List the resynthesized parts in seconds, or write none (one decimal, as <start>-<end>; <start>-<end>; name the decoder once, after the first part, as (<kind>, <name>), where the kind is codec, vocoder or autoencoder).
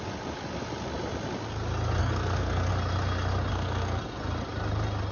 2.0-2.7 (codec, SNAC); 3.5-4.0